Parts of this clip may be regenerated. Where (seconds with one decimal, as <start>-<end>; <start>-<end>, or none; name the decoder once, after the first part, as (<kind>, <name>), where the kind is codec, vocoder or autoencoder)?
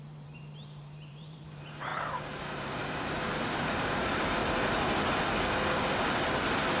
0.0-4.4 (vocoder, BigVGAN v2)